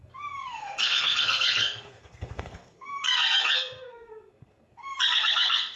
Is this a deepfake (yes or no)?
yes